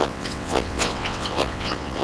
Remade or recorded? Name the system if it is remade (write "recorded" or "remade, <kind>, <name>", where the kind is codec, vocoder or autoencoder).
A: remade, vocoder, WaveNeXt